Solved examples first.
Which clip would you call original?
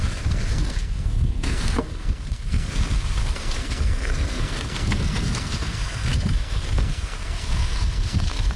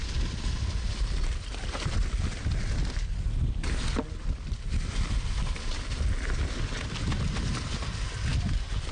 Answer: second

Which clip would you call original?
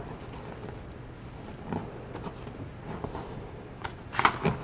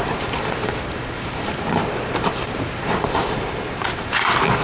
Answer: first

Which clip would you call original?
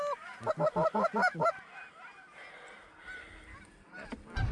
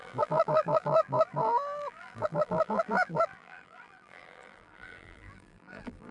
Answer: first